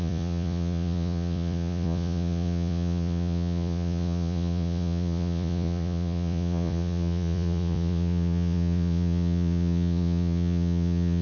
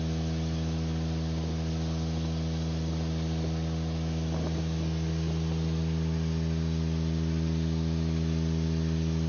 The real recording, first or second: second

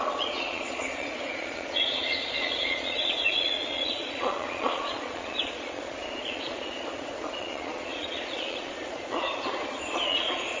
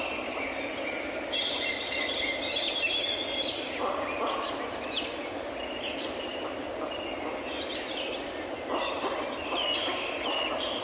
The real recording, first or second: second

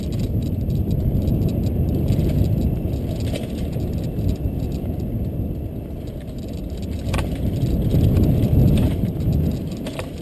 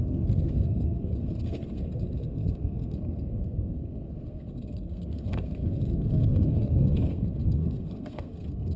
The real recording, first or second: first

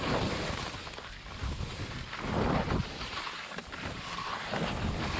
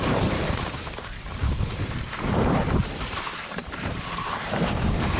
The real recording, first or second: first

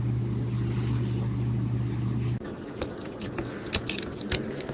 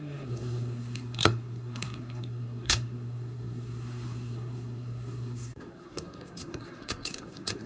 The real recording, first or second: first